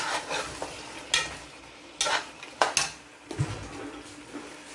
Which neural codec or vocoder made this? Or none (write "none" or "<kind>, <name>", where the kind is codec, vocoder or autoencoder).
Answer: none